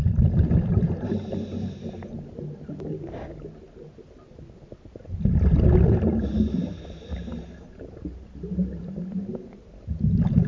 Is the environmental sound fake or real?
real